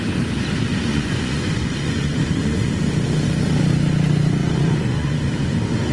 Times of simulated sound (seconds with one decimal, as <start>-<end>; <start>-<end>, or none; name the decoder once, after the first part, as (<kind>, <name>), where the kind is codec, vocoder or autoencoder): 0.9-2.7 (vocoder, Vocos); 4.4-5.2